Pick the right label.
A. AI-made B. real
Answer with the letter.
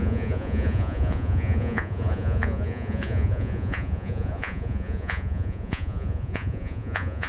A